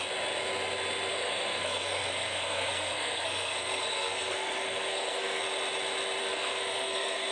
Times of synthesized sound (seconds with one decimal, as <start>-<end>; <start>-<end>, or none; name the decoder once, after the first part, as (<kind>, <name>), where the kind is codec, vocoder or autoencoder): 1.1-5.4 (codec, SNAC); 6.2-7.3